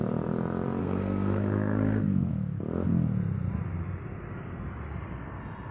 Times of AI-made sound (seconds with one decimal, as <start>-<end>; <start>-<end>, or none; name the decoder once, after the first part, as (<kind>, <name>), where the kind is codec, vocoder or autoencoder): 0.8-2.3 (codec, SNAC)